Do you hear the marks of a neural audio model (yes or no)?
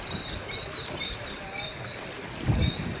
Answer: no